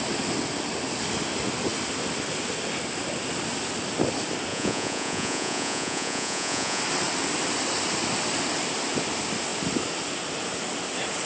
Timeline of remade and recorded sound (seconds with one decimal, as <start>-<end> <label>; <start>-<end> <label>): 0.0-4.5 recorded; 4.5-6.8 remade; 6.8-11.3 recorded